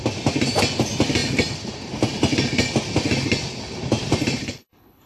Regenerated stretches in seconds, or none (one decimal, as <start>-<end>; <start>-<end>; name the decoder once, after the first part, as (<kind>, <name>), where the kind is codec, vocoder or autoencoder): 4.4-5.1 (codec, HILCodec)